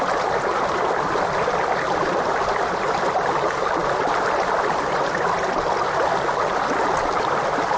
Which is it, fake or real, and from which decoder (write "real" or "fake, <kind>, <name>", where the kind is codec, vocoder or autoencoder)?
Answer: real